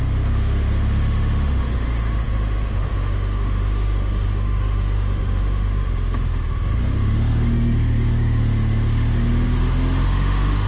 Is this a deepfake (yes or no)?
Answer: yes